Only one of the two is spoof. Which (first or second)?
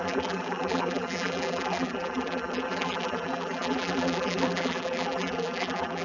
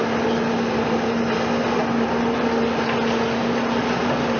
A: first